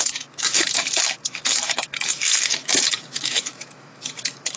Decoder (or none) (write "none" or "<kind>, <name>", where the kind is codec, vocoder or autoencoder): autoencoder, DAC-VAE